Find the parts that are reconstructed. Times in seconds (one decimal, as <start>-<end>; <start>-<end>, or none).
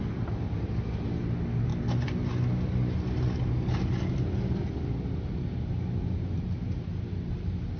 none